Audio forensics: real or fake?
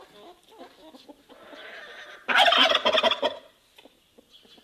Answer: real